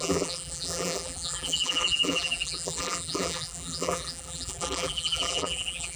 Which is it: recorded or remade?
remade